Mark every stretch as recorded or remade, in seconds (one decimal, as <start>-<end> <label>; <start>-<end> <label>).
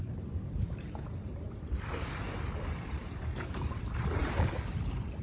0.0-5.2 remade